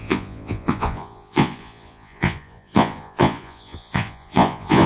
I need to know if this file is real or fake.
fake